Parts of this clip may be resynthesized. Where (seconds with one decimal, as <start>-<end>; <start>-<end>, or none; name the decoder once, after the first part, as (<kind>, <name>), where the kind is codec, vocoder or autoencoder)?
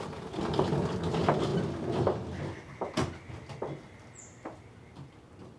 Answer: none